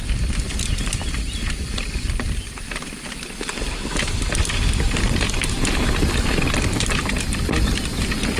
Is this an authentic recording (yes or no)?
yes